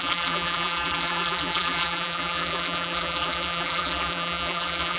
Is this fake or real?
fake